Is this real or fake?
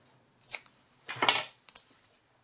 real